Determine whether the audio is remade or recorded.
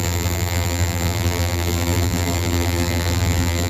remade